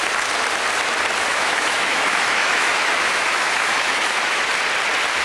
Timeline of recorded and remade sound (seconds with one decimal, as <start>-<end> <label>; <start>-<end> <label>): 0.0-1.3 recorded; 1.3-4.4 remade; 4.4-5.2 recorded

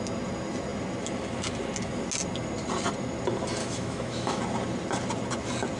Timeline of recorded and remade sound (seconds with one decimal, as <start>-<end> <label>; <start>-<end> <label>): 0.0-3.6 recorded; 3.6-4.4 remade; 4.4-5.8 recorded